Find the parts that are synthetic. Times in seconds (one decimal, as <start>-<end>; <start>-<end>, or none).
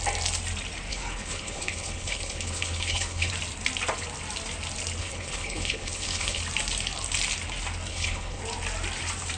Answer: 0.9-3.3; 5.0-6.4; 7.9-8.4